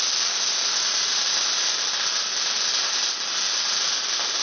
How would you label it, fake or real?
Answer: real